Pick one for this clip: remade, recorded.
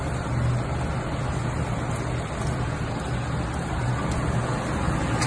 recorded